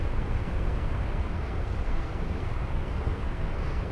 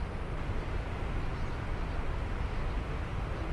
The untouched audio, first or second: second